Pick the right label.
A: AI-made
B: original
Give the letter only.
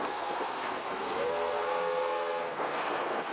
A